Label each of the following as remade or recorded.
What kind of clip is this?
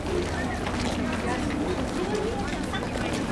recorded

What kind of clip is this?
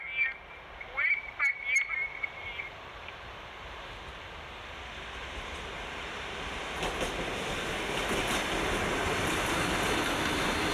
recorded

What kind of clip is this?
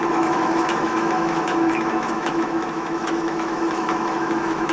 remade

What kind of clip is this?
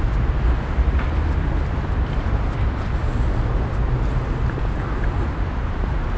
recorded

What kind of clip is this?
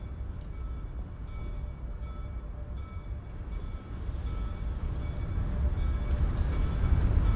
recorded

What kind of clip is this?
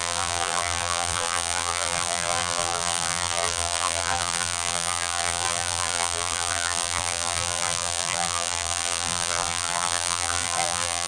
remade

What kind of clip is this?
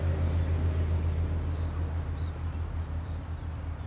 recorded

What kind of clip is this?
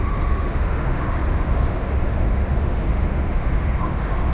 remade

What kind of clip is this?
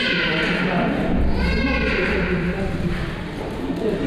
remade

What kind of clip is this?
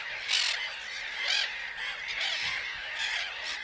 recorded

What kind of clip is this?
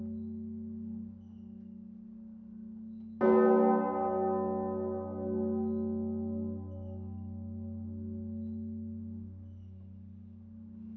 recorded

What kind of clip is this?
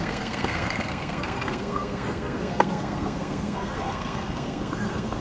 remade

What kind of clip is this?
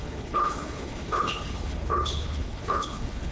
remade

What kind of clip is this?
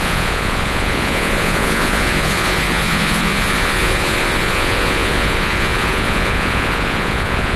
remade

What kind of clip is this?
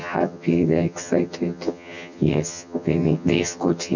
remade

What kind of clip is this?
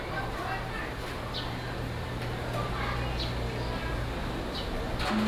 recorded